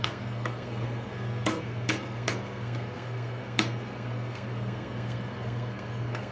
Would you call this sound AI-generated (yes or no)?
yes